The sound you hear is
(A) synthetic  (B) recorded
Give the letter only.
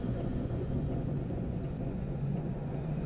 A